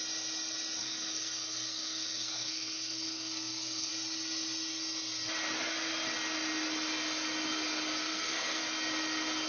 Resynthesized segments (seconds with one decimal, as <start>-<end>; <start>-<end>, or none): 0.8-3.9; 8.0-8.6